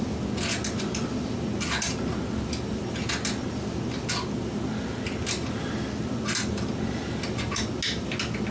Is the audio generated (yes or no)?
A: no